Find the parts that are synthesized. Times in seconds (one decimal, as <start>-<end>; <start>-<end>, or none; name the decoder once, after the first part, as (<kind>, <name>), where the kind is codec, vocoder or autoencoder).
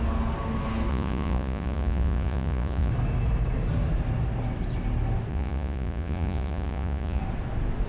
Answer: 0.9-2.9 (vocoder, Vocos); 5.3-7.2